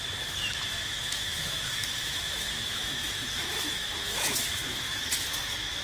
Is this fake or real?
fake